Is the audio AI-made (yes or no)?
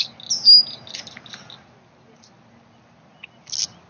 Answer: no